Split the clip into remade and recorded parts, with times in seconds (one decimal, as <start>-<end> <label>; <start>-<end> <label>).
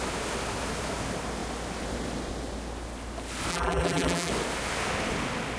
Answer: 0.0-3.5 recorded; 3.5-4.3 remade; 4.3-5.6 recorded